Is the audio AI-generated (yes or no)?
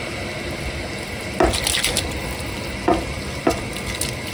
no